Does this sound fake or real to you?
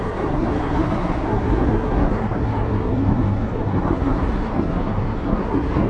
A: fake